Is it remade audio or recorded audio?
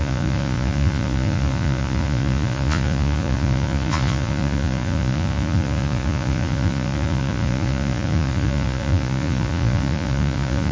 remade